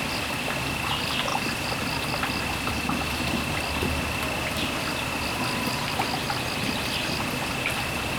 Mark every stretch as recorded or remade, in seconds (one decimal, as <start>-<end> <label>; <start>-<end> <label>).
0.0-1.3 recorded; 1.3-2.7 remade; 2.7-8.2 recorded